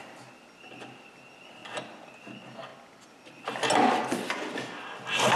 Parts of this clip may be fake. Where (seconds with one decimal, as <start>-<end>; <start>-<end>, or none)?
1.6-2.1